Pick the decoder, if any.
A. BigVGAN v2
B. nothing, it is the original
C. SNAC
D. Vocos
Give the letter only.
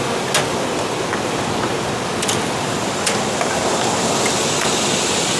B